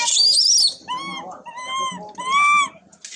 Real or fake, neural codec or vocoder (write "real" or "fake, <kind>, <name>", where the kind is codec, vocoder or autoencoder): real